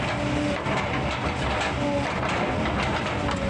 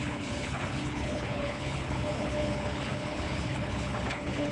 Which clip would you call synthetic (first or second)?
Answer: second